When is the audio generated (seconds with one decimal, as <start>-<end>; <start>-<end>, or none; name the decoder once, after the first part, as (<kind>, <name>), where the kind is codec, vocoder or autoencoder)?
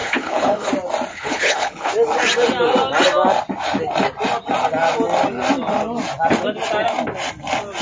0.0-0.7 (codec, HILCodec); 1.1-1.9